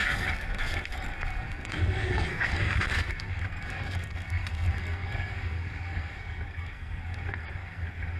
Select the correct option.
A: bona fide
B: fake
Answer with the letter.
B